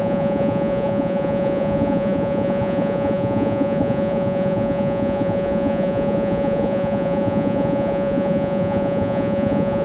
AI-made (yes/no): yes